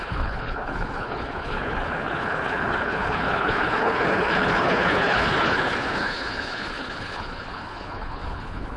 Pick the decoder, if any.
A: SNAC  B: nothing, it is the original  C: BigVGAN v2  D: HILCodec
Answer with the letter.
D